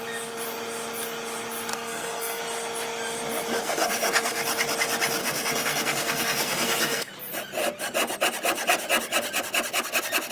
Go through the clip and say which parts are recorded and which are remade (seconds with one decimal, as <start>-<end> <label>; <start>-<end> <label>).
0.0-1.7 recorded; 1.7-2.4 remade; 2.4-3.6 recorded; 3.6-4.4 remade; 4.4-5.2 recorded; 5.2-7.1 remade; 7.1-10.3 recorded